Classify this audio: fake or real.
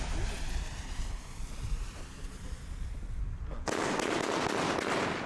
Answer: real